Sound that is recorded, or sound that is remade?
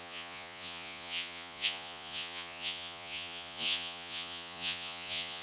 remade